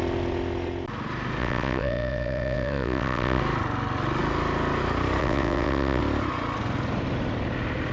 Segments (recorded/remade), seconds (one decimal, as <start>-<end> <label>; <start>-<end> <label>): 0.0-1.4 recorded; 1.4-3.4 remade; 3.4-5.2 recorded; 5.2-6.0 remade; 6.0-7.9 recorded